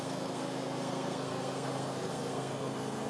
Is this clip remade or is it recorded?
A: remade